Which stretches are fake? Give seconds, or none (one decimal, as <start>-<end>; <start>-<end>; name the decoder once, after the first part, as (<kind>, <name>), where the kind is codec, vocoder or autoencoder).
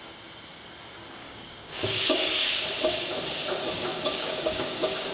1.2-2.6 (codec, DAC); 3.9-5.1